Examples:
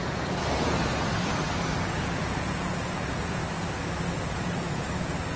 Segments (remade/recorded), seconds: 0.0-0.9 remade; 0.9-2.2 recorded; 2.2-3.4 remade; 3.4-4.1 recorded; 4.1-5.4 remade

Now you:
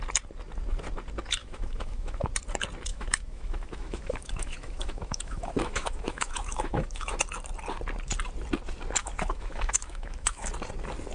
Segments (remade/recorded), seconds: 0.0-1.4 recorded; 1.4-2.3 remade; 2.3-2.9 recorded; 2.9-7.2 remade; 7.2-9.0 recorded; 9.0-10.5 remade; 10.5-11.1 recorded

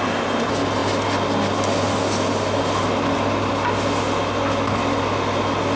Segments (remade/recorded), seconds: 0.0-5.8 recorded

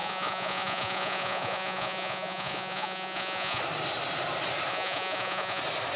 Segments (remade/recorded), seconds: 0.0-3.6 remade; 3.6-4.7 recorded; 4.7-5.6 remade; 5.6-6.0 recorded

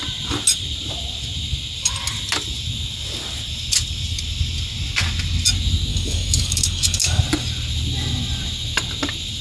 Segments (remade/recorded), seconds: 0.0-5.9 recorded; 5.9-7.2 remade; 7.2-9.4 recorded